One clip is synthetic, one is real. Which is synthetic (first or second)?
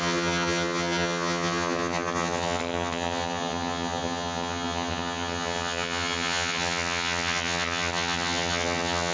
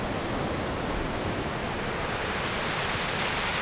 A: first